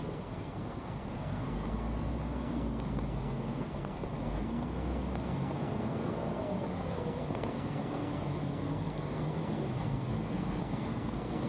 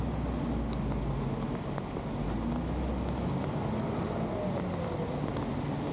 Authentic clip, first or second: second